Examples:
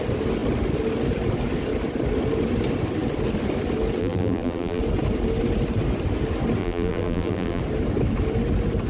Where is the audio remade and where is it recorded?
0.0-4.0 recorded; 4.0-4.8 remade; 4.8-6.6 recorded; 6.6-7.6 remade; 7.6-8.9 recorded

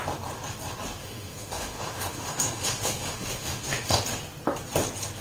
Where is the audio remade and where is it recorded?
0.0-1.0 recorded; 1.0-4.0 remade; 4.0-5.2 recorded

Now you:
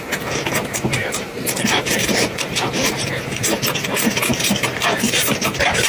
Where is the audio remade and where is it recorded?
0.0-1.0 recorded; 1.0-3.1 remade; 3.1-4.3 recorded; 4.3-5.9 remade

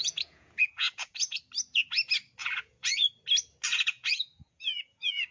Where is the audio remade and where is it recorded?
0.0-1.4 remade; 1.4-2.4 recorded; 2.4-3.1 remade; 3.1-3.7 recorded; 3.7-5.3 remade

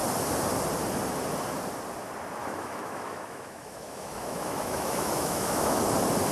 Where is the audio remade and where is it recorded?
0.0-2.4 recorded; 2.4-5.8 remade; 5.8-6.3 recorded